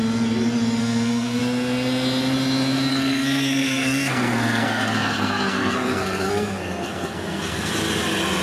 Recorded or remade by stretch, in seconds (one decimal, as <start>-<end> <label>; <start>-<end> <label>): 0.0-0.8 recorded; 0.8-1.4 remade; 1.4-2.9 recorded; 2.9-7.7 remade; 7.7-8.4 recorded